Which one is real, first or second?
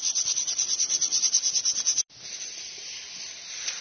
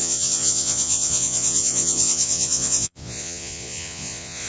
first